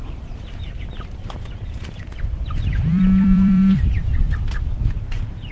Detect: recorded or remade remade